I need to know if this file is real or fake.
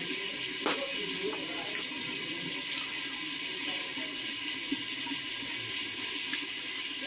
real